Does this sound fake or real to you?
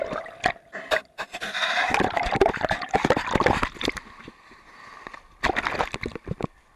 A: fake